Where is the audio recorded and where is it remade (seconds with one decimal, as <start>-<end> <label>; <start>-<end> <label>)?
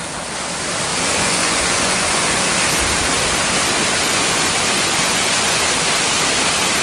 0.0-0.9 recorded; 0.9-2.4 remade; 2.4-4.1 recorded; 4.1-5.6 remade; 5.6-6.8 recorded